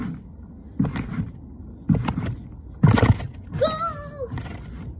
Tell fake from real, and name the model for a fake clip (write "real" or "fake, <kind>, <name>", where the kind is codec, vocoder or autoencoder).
real